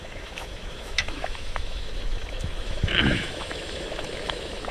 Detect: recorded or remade remade